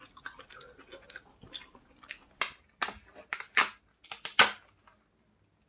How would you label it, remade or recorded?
recorded